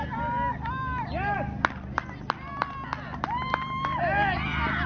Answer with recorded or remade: recorded